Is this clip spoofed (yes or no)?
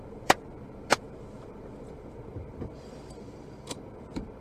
yes